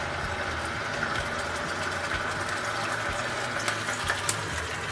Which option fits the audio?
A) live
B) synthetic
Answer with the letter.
A